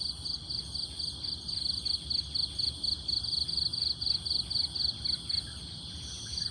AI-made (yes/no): no